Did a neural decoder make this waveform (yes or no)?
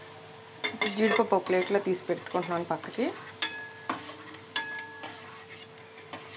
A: no